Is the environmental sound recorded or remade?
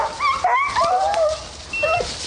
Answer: recorded